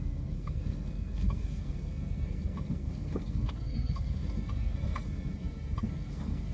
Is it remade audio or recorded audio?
remade